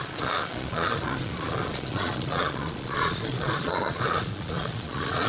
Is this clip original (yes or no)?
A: no